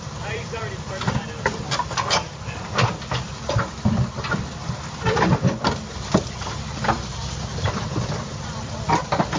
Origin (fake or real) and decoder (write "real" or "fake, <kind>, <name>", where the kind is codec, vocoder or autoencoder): fake, vocoder, BigVGAN v2